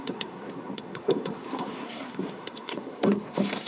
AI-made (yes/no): yes